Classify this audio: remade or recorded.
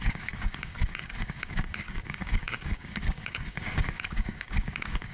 remade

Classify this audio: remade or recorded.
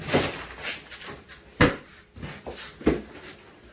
recorded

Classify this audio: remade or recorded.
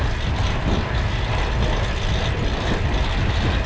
recorded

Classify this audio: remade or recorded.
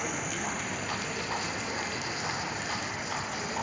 recorded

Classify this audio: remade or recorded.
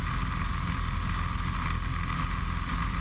recorded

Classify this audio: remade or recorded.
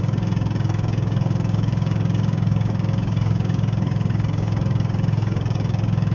remade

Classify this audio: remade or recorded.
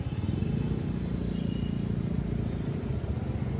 recorded